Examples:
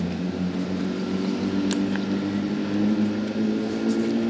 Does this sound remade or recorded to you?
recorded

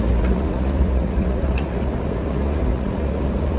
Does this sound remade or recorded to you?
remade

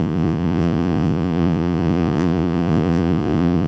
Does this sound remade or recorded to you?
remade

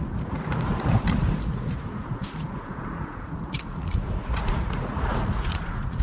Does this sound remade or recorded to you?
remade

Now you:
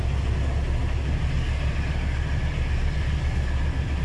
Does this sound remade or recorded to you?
recorded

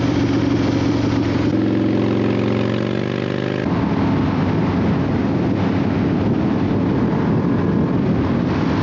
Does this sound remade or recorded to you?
recorded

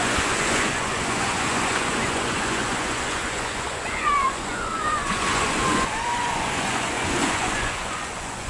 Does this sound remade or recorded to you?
remade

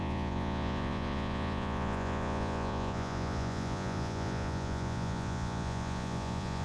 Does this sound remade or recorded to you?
remade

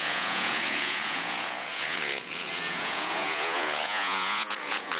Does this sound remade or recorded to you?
remade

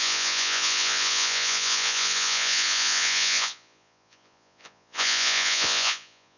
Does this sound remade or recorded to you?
remade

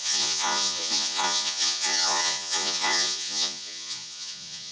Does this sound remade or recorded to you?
remade